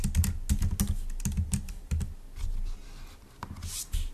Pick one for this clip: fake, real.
real